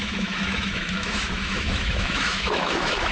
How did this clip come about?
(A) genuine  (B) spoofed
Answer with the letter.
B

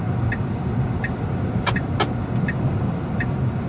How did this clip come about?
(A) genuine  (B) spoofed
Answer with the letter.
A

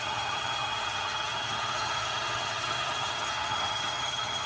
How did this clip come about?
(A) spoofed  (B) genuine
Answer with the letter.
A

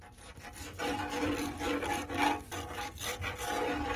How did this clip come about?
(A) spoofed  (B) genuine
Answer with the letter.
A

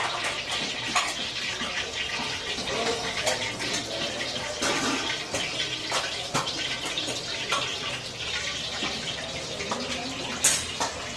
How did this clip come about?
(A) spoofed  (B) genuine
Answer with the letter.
B